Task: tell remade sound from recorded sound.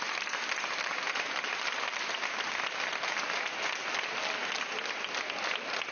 recorded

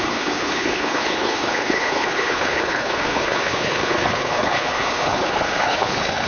remade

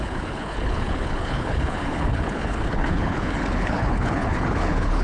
remade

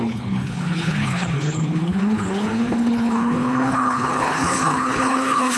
remade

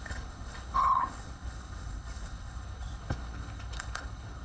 remade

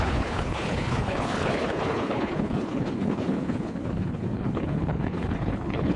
remade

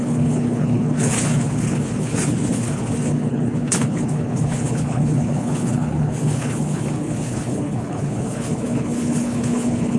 remade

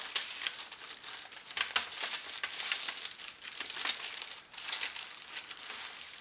recorded